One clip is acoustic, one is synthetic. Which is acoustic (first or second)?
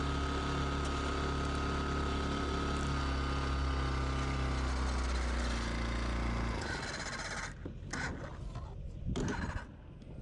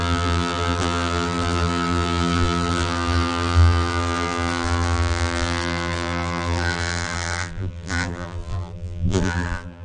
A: first